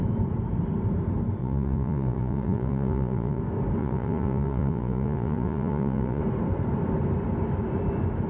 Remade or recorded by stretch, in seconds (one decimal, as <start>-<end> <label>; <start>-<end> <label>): 0.0-1.4 recorded; 1.4-3.4 remade; 3.4-3.8 recorded; 3.8-6.2 remade; 6.2-8.3 recorded

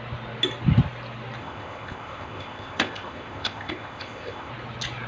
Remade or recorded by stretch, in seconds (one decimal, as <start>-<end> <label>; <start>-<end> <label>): 0.0-1.4 recorded; 1.4-4.5 remade; 4.5-5.1 recorded

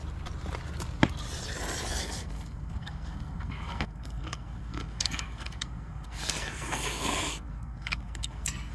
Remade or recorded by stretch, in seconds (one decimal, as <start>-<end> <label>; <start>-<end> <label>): 0.0-1.9 recorded; 1.9-8.7 remade